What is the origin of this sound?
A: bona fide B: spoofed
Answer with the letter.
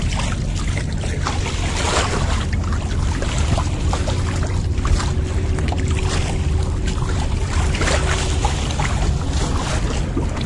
A